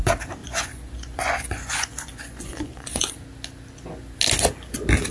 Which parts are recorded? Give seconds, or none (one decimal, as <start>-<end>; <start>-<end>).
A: 0.0-0.4; 3.1-5.1